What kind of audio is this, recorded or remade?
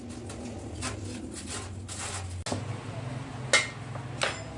recorded